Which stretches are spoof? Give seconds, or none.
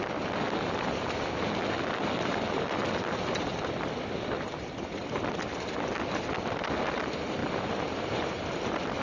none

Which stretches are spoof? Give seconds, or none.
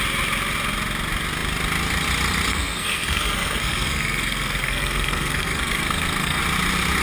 2.5-6.4 (codec, SNAC)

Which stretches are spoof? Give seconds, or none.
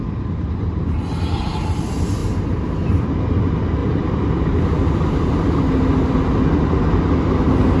0.0-1.8 (vocoder, BigVGAN v2); 3.8-5.6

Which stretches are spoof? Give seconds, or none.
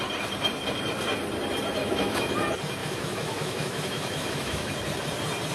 1.8-2.3 (autoencoder, DAC-VAE); 2.8-4.7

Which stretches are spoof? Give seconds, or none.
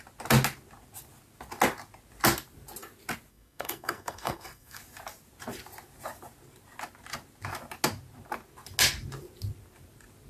3.3-4.8 (codec, SNAC)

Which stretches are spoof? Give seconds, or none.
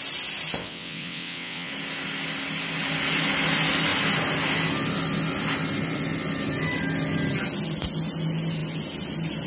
0.6-1.7 (vocoder, WaveNeXt)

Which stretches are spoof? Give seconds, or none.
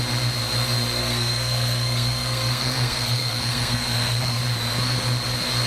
1.0-4.4 (codec, SNAC)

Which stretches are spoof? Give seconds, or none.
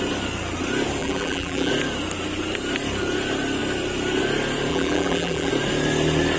1.0-1.7 (vocoder, BigVGAN v2); 4.7-5.5